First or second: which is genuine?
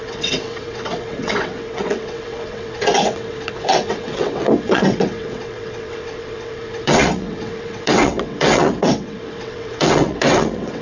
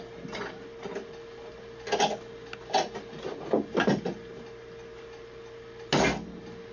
second